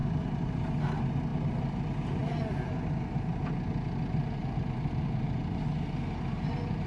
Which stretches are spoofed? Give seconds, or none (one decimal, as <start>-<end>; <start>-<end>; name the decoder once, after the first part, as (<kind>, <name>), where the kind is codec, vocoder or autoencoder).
0.0-0.5 (vocoder, BigVGAN v2); 1.3-1.8; 2.2-3.4; 4.4-5.6